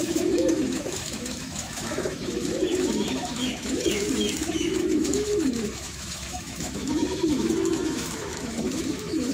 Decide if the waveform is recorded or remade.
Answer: remade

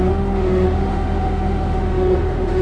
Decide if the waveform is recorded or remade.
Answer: remade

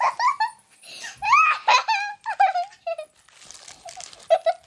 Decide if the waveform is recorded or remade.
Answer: recorded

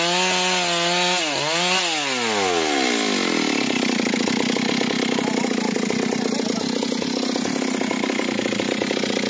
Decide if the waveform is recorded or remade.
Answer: recorded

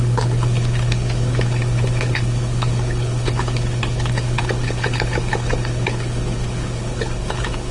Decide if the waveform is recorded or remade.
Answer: remade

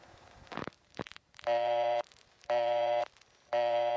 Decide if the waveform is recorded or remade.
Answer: remade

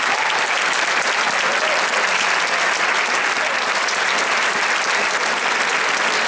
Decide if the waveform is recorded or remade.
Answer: recorded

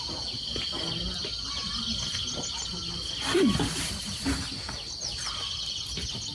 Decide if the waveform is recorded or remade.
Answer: recorded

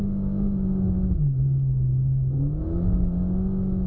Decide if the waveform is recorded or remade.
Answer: recorded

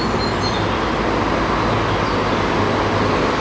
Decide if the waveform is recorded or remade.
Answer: recorded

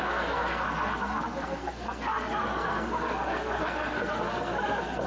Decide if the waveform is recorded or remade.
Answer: remade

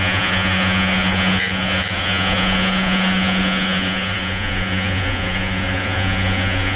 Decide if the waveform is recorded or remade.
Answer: remade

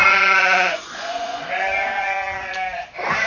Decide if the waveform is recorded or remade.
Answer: remade